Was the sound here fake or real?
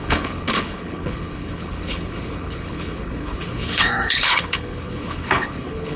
fake